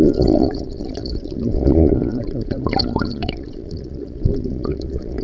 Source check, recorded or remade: remade